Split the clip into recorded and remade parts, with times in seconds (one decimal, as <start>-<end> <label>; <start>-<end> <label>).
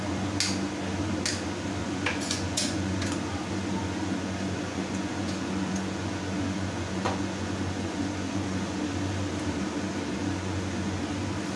0.0-1.8 recorded; 1.8-3.1 remade; 3.1-3.8 recorded; 3.8-8.8 remade; 8.8-10.2 recorded; 10.2-11.0 remade; 11.0-11.6 recorded